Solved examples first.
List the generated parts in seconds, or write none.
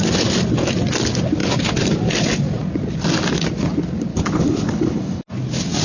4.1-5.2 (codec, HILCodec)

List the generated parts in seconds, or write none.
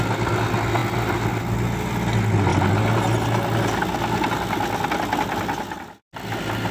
none